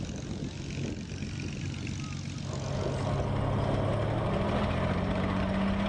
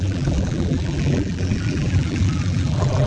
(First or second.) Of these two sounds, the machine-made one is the second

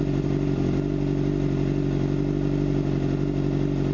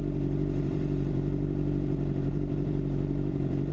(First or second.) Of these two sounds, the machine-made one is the second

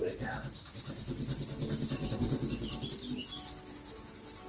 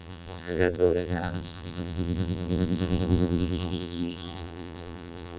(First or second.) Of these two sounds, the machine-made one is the second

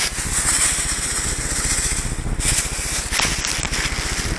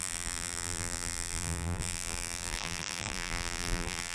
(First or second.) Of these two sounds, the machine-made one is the second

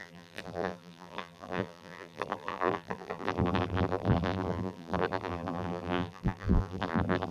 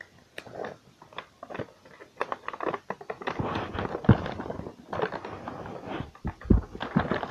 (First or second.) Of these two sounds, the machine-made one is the first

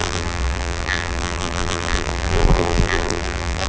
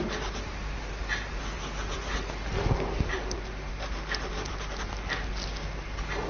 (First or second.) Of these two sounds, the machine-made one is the first